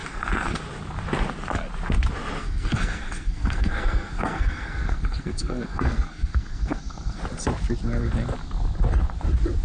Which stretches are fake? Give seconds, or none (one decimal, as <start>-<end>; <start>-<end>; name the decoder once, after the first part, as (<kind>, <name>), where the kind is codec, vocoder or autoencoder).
0.0-0.6 (codec, SNAC); 2.4-7.2